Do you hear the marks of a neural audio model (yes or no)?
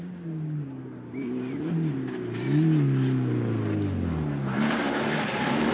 no